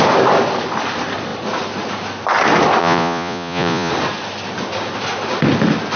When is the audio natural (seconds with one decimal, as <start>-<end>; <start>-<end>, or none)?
0.0-2.8; 3.9-6.0